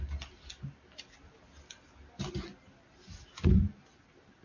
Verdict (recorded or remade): recorded